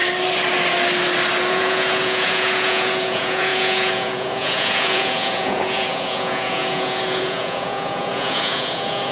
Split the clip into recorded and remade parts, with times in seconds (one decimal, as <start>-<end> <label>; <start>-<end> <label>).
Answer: 0.0-1.5 recorded; 1.5-9.1 remade